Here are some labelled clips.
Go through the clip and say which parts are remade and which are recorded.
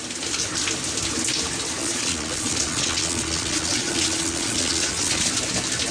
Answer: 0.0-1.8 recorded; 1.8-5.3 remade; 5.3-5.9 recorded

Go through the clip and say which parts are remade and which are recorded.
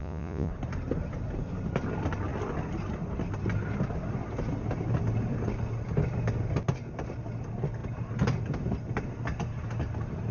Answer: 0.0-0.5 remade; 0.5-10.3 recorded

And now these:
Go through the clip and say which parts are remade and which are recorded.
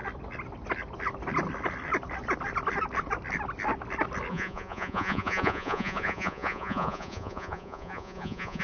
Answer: 0.0-4.3 recorded; 4.3-8.6 remade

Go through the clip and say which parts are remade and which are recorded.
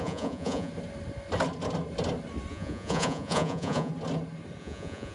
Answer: 0.0-0.7 remade; 0.7-2.5 recorded; 2.5-3.9 remade; 3.9-4.6 recorded; 4.6-5.1 remade